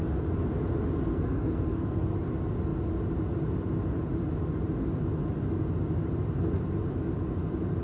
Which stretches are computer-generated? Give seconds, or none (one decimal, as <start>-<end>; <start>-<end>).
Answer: 1.1-2.1